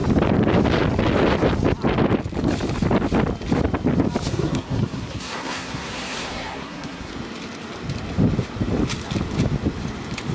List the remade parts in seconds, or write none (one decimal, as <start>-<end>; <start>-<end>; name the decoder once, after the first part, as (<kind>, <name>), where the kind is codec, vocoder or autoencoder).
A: 4.3-7.1 (codec, SNAC)